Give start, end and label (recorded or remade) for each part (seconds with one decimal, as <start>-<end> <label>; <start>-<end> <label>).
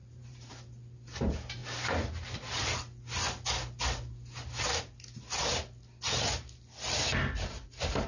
0.0-0.5 remade; 0.5-8.1 recorded